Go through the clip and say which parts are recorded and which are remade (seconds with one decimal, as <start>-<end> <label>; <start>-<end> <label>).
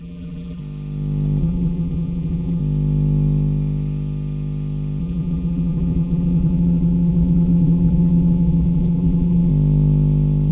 0.0-0.6 remade; 0.6-1.4 recorded; 1.4-2.6 remade; 2.6-5.0 recorded; 5.0-9.5 remade; 9.5-10.5 recorded